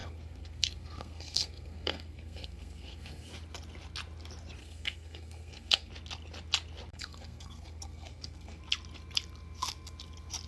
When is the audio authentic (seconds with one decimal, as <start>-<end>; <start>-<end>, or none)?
3.3-4.6; 5.9-6.9; 8.6-10.5